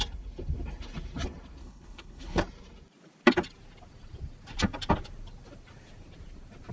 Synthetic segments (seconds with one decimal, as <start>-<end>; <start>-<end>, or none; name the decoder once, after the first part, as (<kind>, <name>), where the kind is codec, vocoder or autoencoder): 1.6-2.4 (codec, HILCodec)